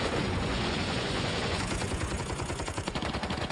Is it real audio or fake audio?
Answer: fake